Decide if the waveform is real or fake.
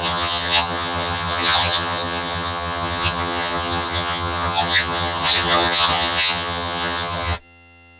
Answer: fake